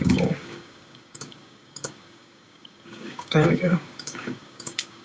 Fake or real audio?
fake